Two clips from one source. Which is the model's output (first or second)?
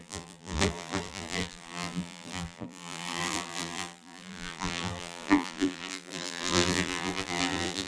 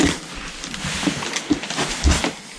first